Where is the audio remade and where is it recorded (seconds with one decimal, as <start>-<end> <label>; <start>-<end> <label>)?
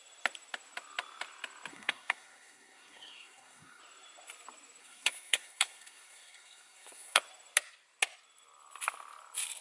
0.0-1.7 recorded; 1.7-3.8 remade; 3.8-4.8 recorded; 4.8-7.2 remade; 7.2-9.6 recorded